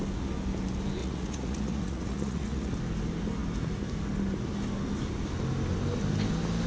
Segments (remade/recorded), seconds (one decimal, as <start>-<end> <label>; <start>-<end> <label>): 0.0-1.0 recorded; 1.0-2.7 remade; 2.7-6.7 recorded